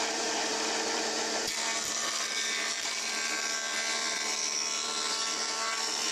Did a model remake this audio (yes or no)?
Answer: yes